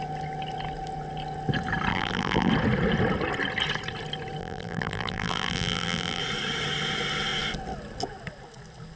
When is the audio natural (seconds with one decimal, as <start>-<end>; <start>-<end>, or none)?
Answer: 0.0-1.9; 2.5-4.4; 6.2-9.0